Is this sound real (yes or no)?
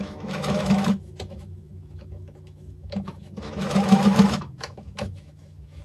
no